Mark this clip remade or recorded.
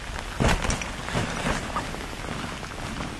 recorded